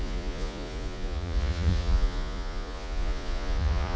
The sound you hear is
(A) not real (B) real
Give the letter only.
A